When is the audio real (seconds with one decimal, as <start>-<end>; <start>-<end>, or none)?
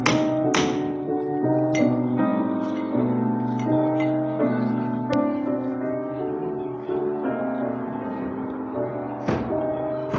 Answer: 0.0-10.2